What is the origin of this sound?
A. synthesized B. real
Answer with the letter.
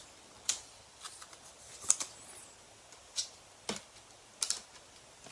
B